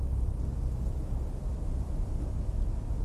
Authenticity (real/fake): real